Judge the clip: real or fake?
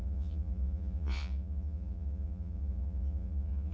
fake